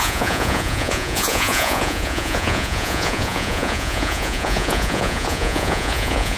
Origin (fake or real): fake